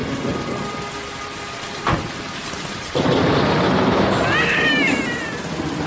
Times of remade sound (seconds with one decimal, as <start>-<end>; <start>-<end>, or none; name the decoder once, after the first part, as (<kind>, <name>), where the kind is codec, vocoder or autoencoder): none